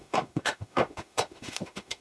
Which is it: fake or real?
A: fake